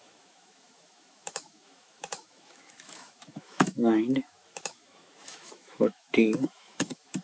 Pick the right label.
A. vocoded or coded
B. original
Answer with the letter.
A